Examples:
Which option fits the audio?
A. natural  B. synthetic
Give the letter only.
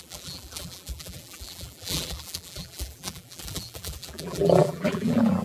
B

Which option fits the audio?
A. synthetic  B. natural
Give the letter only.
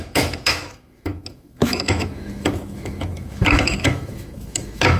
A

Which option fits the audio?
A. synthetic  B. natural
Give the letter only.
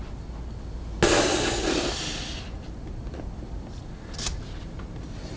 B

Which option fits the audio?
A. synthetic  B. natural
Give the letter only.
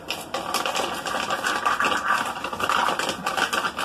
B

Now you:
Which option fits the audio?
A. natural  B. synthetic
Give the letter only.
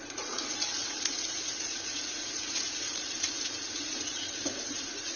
B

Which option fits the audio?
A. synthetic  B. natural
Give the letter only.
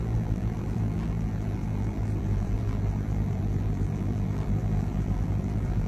A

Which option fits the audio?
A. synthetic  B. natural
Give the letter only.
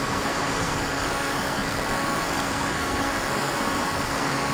A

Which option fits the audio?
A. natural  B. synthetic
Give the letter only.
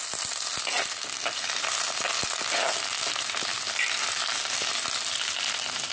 A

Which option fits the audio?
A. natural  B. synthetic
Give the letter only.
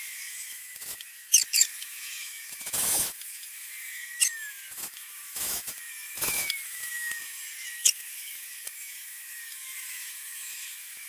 B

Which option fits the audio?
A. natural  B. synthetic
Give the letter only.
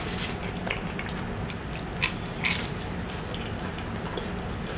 A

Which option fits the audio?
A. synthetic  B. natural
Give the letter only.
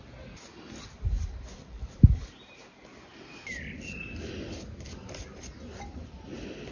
B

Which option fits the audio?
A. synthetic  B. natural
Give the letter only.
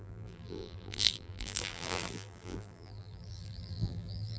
A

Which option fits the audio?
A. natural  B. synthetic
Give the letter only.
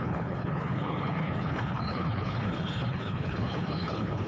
B